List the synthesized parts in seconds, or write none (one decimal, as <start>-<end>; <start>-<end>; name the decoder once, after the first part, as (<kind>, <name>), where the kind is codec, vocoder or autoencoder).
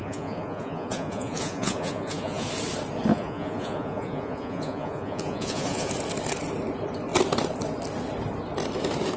0.0-2.5 (vocoder, Vocos); 3.1-5.9